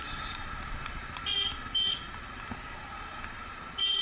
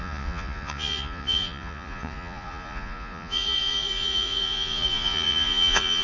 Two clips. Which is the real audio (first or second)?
first